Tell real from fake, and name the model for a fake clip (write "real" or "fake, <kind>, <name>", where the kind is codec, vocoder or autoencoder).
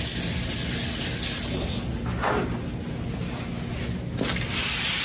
real